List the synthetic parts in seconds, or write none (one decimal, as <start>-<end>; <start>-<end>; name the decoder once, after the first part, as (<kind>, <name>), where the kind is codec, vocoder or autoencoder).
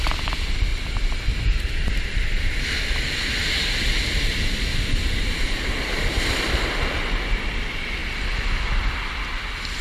0.7-2.6 (vocoder, BigVGAN v2); 4.7-6.6